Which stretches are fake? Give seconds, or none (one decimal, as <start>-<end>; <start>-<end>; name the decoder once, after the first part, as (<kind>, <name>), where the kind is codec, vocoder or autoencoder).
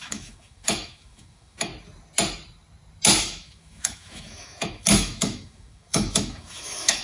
0.0-1.7 (autoencoder, DAC-VAE); 3.2-7.0